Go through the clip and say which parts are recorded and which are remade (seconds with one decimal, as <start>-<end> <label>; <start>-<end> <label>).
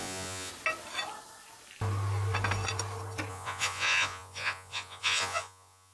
0.0-0.5 remade; 0.5-3.3 recorded; 3.3-5.9 remade